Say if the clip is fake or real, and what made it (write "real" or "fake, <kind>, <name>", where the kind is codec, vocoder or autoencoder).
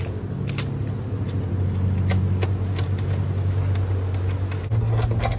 real